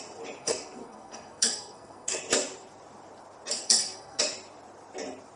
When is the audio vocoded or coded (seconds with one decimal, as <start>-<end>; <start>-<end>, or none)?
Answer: 0.4-2.2; 3.6-4.2